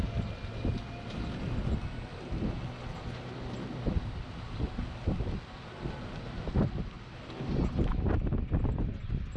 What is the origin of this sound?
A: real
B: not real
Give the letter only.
A